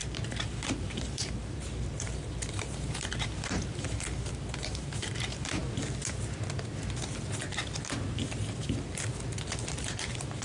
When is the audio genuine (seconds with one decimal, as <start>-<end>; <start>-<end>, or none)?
5.6-9.8